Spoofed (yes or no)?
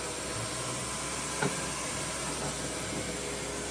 no